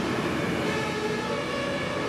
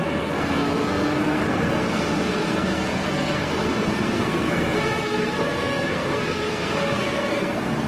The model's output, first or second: second